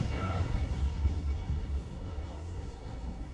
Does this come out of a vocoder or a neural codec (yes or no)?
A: yes